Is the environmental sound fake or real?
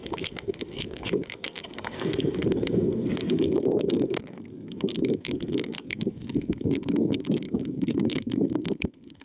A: fake